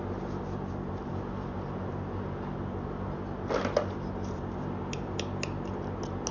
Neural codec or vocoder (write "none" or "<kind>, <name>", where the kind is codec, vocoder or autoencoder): none